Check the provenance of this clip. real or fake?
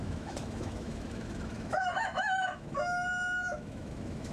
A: fake